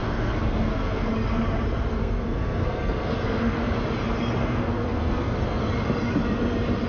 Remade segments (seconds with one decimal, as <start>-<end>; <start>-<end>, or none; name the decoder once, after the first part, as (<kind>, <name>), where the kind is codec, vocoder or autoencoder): 0.0-1.1 (codec, SNAC); 1.9-3.6; 4.4-5.6